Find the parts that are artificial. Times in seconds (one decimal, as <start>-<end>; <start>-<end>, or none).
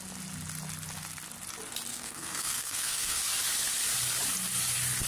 1.9-3.2